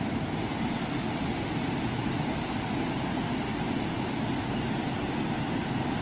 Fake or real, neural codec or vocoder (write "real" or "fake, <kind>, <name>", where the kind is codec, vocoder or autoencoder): real